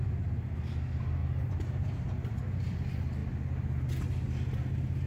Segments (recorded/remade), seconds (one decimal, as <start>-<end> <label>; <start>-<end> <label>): 0.0-1.2 recorded; 1.2-2.4 remade; 2.4-5.1 recorded